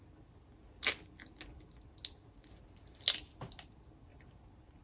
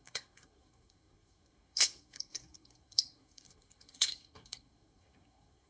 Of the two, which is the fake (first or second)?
second